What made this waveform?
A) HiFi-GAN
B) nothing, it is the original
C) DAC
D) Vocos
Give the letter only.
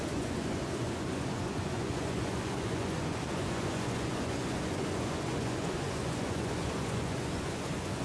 D